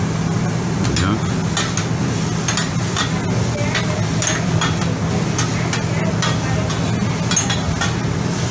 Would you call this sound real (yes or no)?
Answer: yes